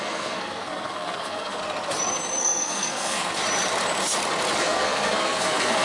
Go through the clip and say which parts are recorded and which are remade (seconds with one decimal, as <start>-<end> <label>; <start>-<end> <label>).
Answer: 0.0-1.6 remade; 1.6-2.4 recorded; 2.4-3.3 remade; 3.3-4.6 recorded; 4.6-5.8 remade